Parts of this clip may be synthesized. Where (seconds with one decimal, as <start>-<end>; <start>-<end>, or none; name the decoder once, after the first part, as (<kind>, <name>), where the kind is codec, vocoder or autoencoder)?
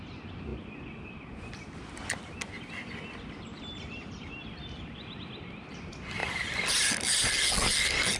0.5-2.9 (vocoder, BigVGAN v2); 3.5-5.2; 6.2-8.2